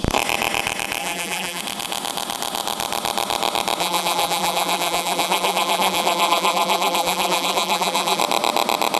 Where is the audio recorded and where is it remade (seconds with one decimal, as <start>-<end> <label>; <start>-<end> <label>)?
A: 0.0-1.0 recorded; 1.0-1.6 remade; 1.6-3.8 recorded; 3.8-8.2 remade; 8.2-9.0 recorded